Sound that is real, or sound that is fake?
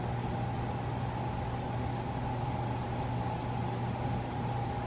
real